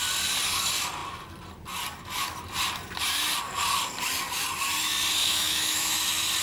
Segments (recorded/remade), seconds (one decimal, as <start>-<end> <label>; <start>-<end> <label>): 0.0-5.2 recorded; 5.2-5.9 remade; 5.9-6.4 recorded